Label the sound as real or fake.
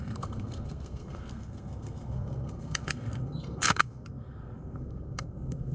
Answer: fake